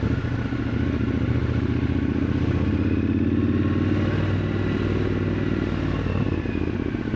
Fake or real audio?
real